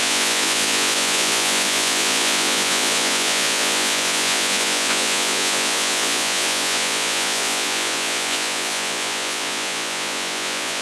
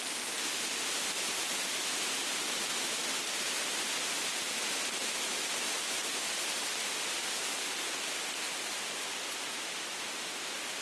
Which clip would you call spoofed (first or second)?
first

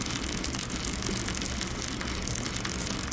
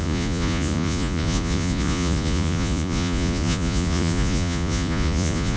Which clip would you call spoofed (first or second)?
second